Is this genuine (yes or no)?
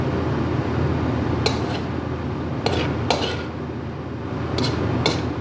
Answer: yes